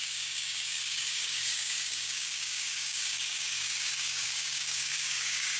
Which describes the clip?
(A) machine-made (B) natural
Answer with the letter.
A